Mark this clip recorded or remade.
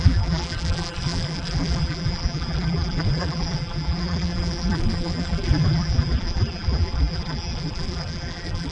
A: remade